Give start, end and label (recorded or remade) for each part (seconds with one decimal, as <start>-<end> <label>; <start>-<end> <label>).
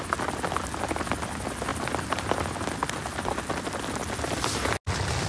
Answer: 0.0-5.3 recorded